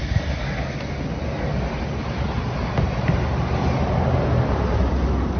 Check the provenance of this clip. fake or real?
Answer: real